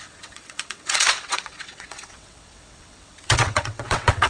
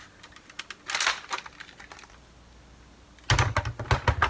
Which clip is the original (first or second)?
second